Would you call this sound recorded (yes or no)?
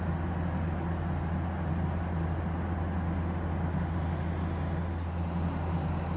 yes